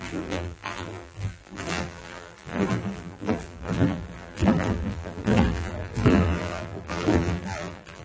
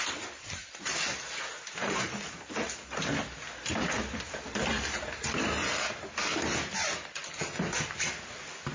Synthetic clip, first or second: first